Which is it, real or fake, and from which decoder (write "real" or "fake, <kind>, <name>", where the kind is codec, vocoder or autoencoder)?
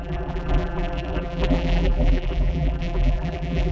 fake, vocoder, BigVGAN v2